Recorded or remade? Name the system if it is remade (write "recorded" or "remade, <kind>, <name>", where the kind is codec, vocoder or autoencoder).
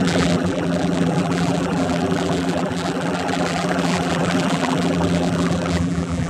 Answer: remade, vocoder, BigVGAN v2